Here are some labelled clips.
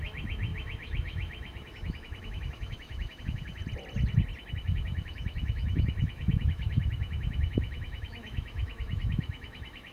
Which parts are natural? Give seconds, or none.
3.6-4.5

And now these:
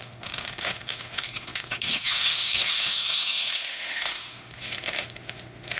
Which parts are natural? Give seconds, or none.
none

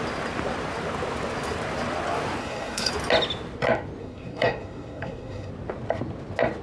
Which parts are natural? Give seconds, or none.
0.0-2.4; 2.9-4.0; 5.5-6.6

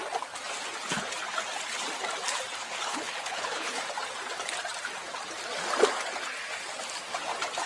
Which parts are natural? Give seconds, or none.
0.0-2.6; 3.8-7.7

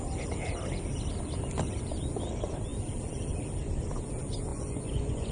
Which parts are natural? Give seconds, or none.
0.0-4.5